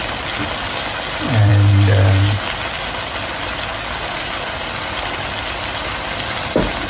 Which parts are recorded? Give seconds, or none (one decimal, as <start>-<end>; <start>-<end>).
0.0-6.9